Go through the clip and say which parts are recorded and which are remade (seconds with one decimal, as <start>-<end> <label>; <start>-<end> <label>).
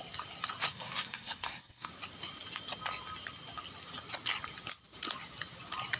0.0-0.7 recorded; 0.7-1.9 remade; 1.9-6.0 recorded